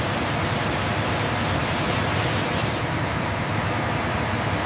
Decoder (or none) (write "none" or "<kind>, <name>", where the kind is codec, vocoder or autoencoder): none